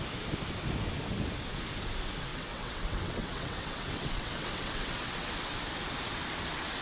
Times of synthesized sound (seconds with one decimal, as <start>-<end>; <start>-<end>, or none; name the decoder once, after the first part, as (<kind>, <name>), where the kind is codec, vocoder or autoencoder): 2.3-5.3 (vocoder, WaveNeXt)